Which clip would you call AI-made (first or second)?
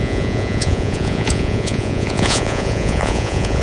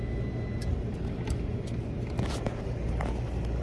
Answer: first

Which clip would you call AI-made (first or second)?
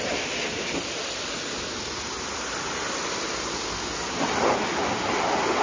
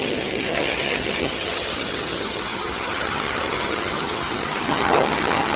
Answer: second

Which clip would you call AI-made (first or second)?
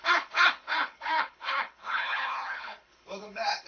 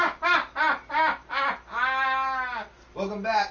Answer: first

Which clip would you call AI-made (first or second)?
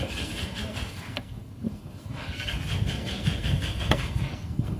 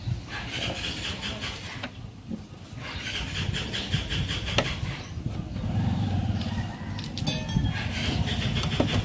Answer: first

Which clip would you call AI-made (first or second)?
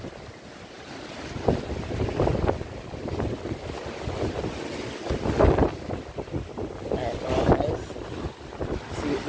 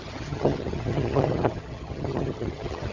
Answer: second